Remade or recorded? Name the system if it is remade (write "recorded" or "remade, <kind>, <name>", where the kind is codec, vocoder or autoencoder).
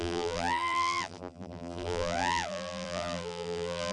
remade, vocoder, BigVGAN v2